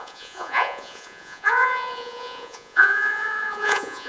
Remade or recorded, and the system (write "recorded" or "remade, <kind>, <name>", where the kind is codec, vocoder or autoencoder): remade, vocoder, Vocos